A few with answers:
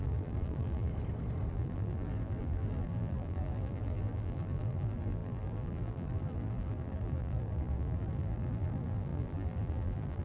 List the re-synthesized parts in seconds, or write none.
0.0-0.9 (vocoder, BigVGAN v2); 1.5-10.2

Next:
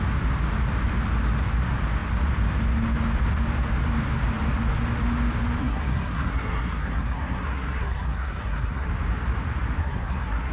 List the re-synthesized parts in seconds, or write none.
5.6-8.9 (codec, SNAC); 9.8-10.5